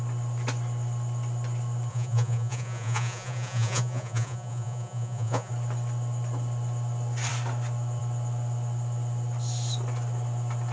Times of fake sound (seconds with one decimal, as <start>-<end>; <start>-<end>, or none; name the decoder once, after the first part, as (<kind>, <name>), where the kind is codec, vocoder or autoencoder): 1.9-5.5 (vocoder, Vocos)